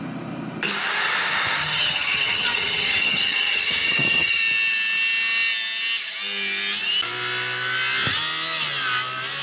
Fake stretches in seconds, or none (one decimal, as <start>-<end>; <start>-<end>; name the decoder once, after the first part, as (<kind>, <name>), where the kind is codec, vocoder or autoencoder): 1.6-4.4 (vocoder, HiFi-GAN)